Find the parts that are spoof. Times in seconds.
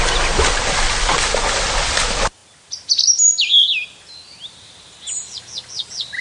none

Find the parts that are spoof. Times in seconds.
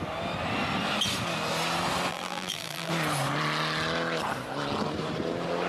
2.1-2.9 (vocoder, BigVGAN v2)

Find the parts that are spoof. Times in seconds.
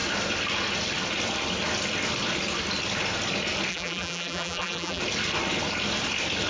3.7-5.0 (vocoder, BigVGAN v2)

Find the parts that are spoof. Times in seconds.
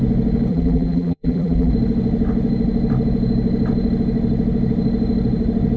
0.5-1.7 (vocoder, BigVGAN v2)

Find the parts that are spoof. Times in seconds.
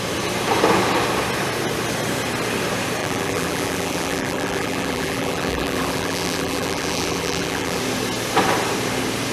3.0-7.8 (vocoder, BigVGAN v2)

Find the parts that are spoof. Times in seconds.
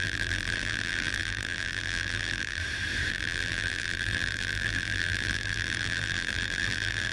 0.0-2.6 (vocoder, BigVGAN v2); 3.1-7.1